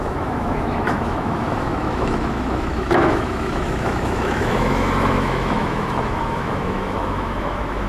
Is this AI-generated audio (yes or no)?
yes